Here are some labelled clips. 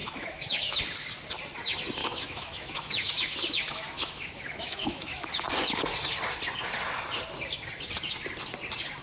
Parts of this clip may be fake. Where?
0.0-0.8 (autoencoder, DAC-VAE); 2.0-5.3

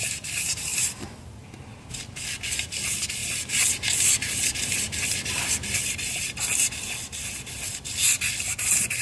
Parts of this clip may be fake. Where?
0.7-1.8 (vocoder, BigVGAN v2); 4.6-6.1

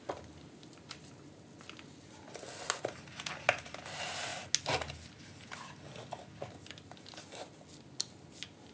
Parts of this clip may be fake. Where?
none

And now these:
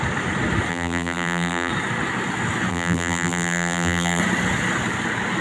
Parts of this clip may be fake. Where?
0.7-1.7 (vocoder, BigVGAN v2); 2.7-4.2

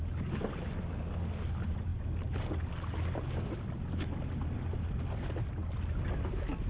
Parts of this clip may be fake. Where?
none